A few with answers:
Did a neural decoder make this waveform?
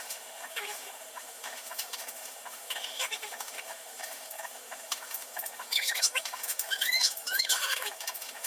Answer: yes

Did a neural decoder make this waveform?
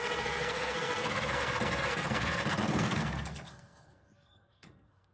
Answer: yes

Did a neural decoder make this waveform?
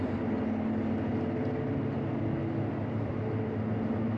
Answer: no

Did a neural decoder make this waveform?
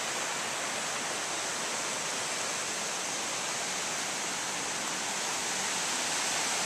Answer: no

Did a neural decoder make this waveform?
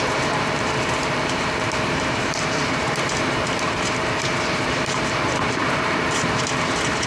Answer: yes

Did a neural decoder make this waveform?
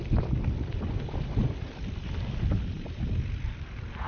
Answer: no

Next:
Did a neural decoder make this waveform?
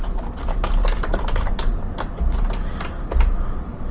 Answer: no